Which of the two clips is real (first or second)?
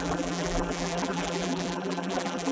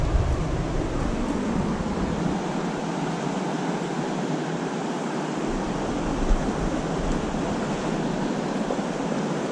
second